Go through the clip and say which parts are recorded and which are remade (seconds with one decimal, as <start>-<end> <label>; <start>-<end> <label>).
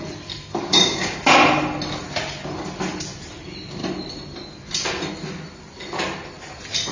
0.0-0.7 recorded; 0.7-1.2 remade; 1.2-6.9 recorded